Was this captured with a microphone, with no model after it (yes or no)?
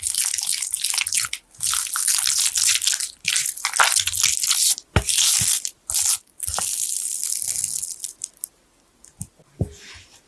yes